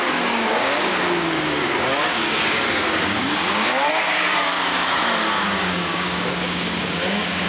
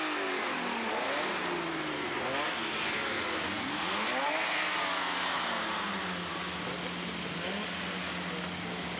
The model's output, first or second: first